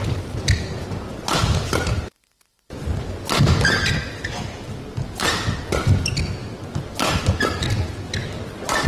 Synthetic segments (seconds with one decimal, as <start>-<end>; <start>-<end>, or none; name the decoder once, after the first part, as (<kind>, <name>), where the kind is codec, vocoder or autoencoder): 6.4-7.2 (vocoder, BigVGAN v2)

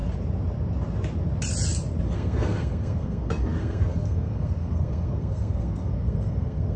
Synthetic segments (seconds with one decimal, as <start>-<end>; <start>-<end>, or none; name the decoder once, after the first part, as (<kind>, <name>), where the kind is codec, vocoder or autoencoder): 2.0-6.8 (codec, SNAC)

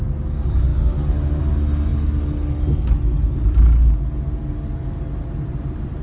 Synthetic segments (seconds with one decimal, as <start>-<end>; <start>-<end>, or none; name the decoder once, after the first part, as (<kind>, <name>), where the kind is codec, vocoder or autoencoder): none